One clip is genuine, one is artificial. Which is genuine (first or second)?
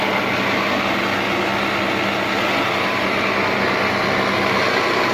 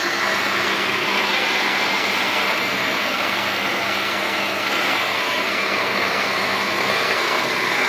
first